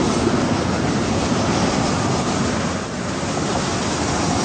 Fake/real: real